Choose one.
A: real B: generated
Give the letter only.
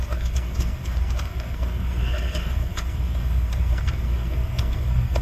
B